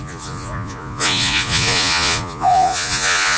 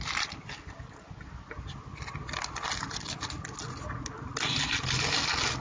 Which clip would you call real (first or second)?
second